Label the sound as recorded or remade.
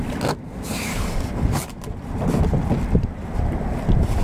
recorded